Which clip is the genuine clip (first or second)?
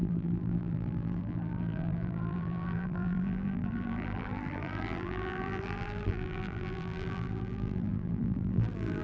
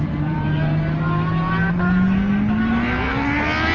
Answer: second